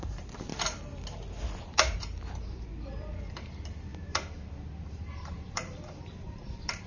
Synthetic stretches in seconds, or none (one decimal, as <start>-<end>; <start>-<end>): 0.0-0.5; 1.6-2.7; 3.3-3.9; 4.8-6.9